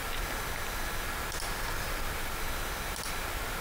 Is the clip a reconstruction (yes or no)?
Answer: no